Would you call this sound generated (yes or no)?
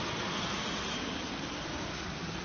no